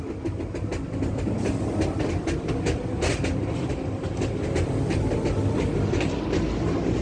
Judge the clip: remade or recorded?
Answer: recorded